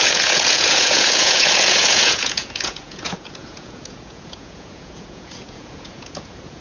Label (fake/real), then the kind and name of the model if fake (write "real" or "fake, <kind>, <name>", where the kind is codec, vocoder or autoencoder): fake, vocoder, Vocos